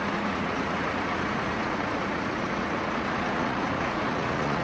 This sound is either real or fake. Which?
fake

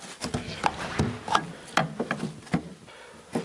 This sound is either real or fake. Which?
real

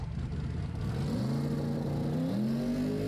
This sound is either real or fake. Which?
real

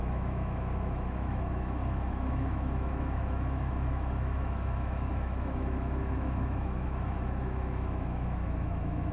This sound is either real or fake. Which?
fake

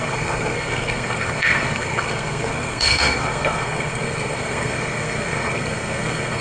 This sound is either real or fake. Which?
fake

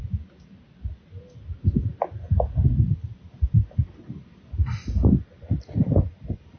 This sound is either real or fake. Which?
real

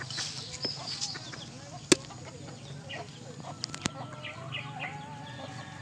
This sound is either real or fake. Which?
real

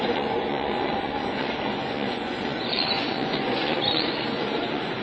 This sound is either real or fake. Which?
fake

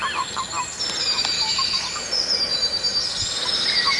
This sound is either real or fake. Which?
real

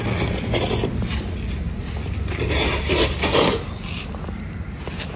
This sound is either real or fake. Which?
real